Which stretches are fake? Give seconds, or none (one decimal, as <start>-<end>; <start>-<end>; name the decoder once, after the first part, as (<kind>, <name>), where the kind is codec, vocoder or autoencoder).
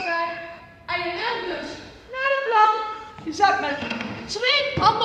0.0-0.6 (autoencoder, DAC-VAE); 1.2-3.1; 3.7-4.6